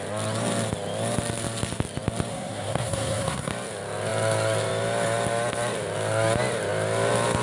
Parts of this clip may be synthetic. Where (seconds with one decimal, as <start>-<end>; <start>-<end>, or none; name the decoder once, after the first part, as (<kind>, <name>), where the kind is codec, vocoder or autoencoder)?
2.3-3.5 (codec, SNAC)